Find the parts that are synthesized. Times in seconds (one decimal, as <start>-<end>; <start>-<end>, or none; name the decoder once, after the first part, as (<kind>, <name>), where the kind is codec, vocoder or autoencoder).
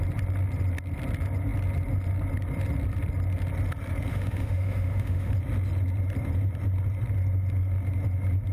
4.1-5.3 (autoencoder, DAC-VAE)